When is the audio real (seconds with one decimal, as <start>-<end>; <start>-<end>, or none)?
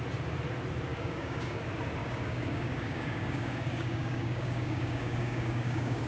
0.0-0.9; 1.6-2.0